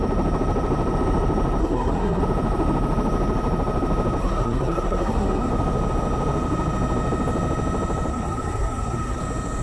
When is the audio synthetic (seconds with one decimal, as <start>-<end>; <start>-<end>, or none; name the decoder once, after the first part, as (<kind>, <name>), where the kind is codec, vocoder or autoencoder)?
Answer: 1.6-2.2 (codec, SNAC); 4.2-5.5; 8.1-9.2